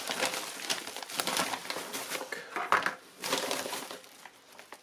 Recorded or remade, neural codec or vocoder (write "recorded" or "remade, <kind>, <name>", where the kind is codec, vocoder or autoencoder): recorded